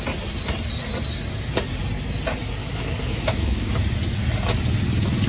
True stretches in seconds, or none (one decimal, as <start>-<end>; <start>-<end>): 0.0-2.6; 3.7-5.3

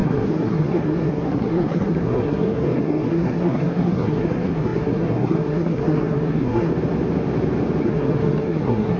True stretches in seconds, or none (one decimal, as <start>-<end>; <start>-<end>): 6.7-7.8

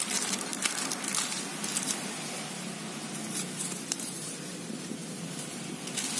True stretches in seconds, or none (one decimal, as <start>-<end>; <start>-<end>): 0.0-6.2

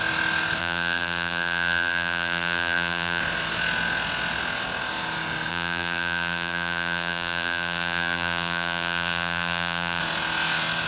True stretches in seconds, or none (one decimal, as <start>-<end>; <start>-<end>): 0.0-0.6; 3.2-5.5; 10.0-10.9

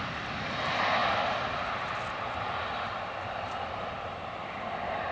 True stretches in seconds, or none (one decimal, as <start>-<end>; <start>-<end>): 0.0-5.1